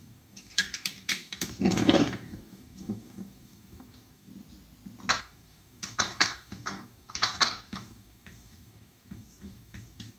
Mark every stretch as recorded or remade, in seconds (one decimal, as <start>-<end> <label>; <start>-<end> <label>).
0.0-4.3 remade; 4.3-5.2 recorded; 5.2-10.2 remade